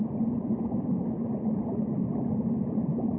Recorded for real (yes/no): no